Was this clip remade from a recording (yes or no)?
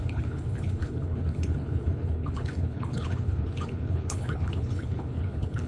yes